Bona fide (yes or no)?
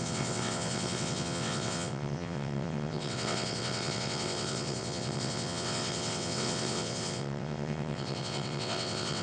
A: no